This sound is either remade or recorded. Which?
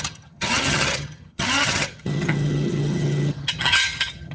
remade